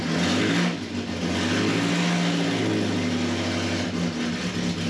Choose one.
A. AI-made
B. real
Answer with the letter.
B